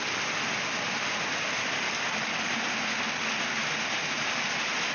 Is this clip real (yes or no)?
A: yes